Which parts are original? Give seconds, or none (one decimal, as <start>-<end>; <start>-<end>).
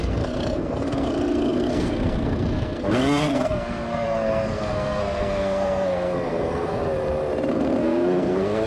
6.8-7.5